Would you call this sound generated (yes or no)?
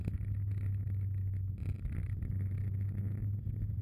no